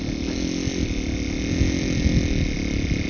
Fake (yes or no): no